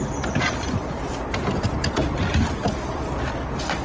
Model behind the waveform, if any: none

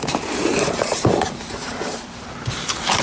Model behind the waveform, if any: vocoder, BigVGAN v2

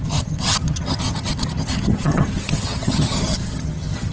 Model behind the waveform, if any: vocoder, HiFi-GAN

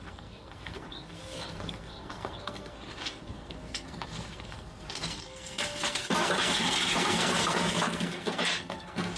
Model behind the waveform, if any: codec, SNAC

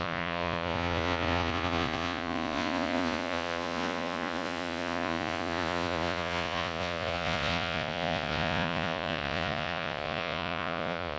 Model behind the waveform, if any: vocoder, Vocos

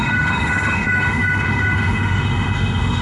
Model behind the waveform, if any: autoencoder, DAC-VAE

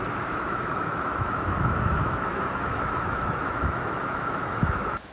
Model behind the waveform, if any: autoencoder, DAC-VAE